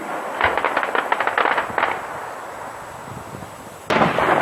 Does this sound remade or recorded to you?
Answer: recorded